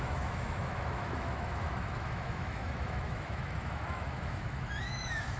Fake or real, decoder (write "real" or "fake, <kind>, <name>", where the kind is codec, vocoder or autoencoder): fake, autoencoder, DAC-VAE